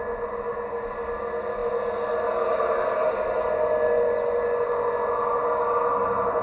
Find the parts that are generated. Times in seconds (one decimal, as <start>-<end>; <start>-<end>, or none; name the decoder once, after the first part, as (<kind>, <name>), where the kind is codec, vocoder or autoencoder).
none